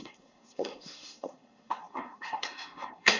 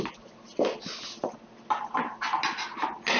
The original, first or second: second